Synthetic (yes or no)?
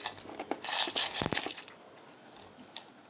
no